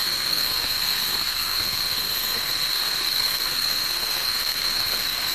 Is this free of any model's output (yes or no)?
no